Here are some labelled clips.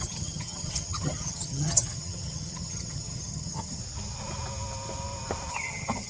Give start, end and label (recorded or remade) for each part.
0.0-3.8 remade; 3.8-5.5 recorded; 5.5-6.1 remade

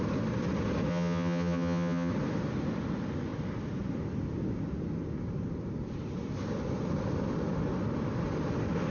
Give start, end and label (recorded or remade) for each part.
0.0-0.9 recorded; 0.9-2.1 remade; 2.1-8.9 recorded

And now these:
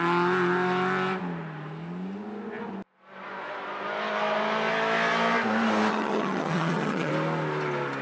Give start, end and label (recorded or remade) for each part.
0.0-5.9 recorded; 5.9-7.1 remade; 7.1-8.0 recorded

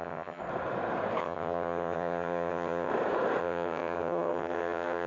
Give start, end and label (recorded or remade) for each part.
0.0-0.4 remade; 0.4-1.2 recorded; 1.2-2.9 remade; 2.9-3.4 recorded; 3.4-5.1 remade

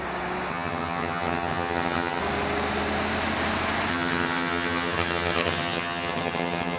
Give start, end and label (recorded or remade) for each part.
0.0-0.5 recorded; 0.5-2.2 remade; 2.2-3.9 recorded; 3.9-6.8 remade